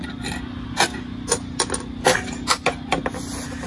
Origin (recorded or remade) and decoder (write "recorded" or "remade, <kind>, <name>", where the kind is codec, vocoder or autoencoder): recorded